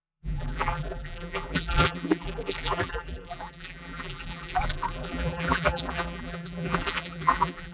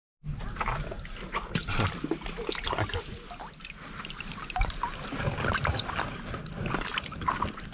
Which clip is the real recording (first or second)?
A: second